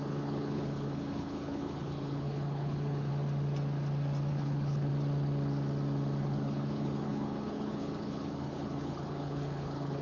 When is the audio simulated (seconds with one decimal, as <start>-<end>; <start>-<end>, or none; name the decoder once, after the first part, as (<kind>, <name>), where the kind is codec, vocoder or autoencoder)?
0.0-3.1 (codec, HILCodec); 4.3-4.9; 6.2-10.0